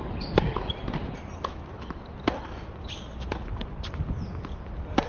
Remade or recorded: recorded